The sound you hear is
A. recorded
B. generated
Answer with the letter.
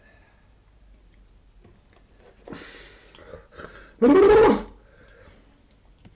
A